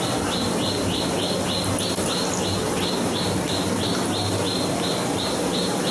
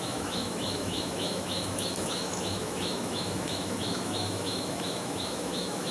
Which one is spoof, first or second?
second